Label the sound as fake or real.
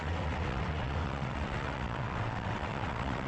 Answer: fake